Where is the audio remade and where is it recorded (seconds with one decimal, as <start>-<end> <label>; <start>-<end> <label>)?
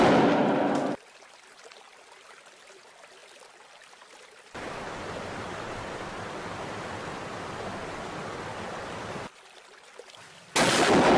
0.0-11.2 recorded